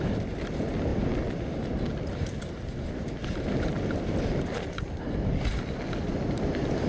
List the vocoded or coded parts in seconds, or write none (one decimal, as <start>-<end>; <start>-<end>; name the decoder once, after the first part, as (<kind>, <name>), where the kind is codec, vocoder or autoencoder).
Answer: none